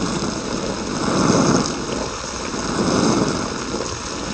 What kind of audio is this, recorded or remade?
remade